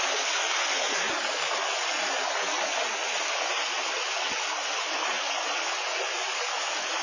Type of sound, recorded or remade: recorded